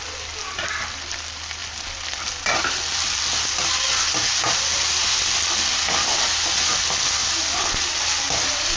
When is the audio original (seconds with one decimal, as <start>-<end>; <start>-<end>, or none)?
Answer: 0.0-8.8